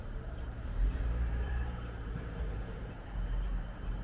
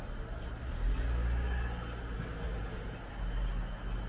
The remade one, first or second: first